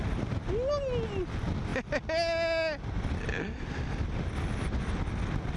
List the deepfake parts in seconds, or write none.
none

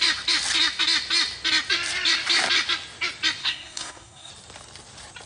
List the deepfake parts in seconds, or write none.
3.4-4.3 (codec, SNAC)